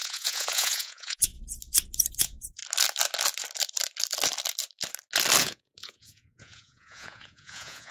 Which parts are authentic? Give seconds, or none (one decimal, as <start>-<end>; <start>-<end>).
1.3-2.2; 2.6-5.4